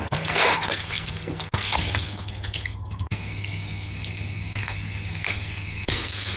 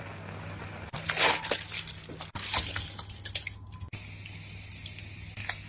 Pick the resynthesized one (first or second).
first